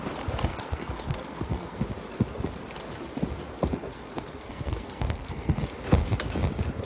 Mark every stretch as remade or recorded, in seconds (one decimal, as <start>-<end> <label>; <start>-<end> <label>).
0.0-0.5 recorded; 0.5-1.8 remade; 1.8-3.9 recorded; 3.9-5.6 remade; 5.6-6.8 recorded